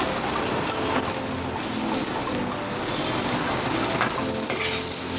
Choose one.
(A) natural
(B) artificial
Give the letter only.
A